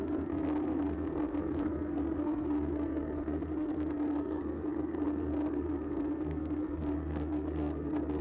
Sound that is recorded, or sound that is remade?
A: remade